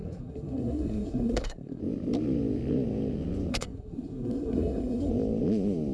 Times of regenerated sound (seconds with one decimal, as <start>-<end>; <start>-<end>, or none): 0.0-1.8; 3.5-5.1